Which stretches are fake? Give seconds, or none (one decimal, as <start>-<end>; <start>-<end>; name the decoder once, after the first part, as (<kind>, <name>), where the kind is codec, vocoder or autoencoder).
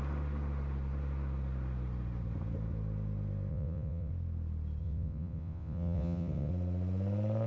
3.5-4.1 (vocoder, WaveNeXt); 4.8-6.5